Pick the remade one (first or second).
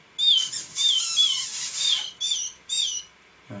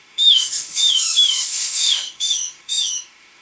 second